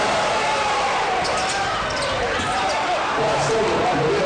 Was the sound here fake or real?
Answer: real